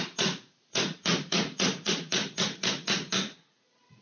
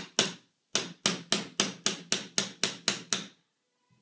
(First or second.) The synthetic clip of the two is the first